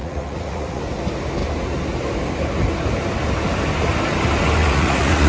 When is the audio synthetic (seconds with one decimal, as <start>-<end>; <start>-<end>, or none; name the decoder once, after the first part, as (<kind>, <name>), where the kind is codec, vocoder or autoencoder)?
0.0-0.8 (vocoder, Vocos); 4.6-5.3